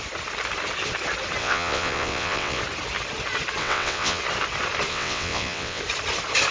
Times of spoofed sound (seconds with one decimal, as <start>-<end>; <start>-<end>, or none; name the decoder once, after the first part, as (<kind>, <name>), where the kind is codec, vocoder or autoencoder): 1.4-2.6 (vocoder, WaveNeXt); 3.6-4.2; 4.9-5.8